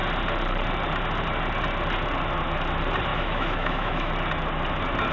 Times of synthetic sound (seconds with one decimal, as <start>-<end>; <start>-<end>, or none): 3.1-4.1